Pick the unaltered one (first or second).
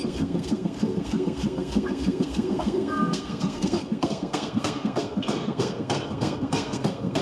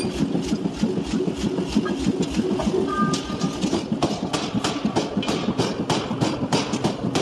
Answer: second